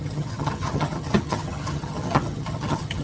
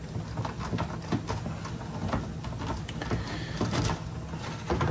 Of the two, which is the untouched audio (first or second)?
second